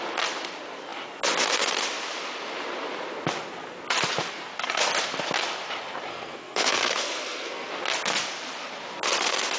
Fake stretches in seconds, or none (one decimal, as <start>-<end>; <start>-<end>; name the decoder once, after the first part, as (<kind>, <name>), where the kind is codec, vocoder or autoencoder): 6.1-7.7 (codec, SNAC)